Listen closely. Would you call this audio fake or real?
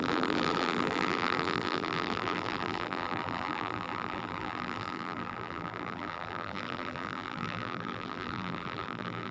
fake